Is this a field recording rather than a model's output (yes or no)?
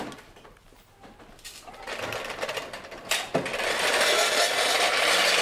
yes